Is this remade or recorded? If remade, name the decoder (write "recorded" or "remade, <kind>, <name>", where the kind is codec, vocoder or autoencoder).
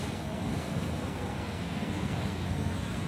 remade, codec, SNAC